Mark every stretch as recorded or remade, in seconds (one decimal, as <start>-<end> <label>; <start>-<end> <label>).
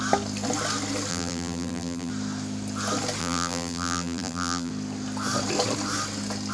0.0-1.1 recorded; 1.1-2.1 remade; 2.1-3.2 recorded; 3.2-4.7 remade; 4.7-6.5 recorded